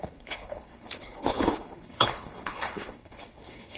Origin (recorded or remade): remade